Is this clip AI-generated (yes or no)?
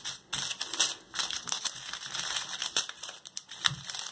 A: no